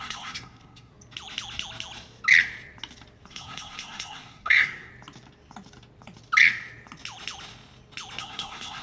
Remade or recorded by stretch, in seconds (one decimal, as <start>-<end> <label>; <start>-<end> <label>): 0.0-0.9 remade; 0.9-3.3 recorded; 3.3-4.9 remade; 4.9-8.2 recorded; 8.2-8.8 remade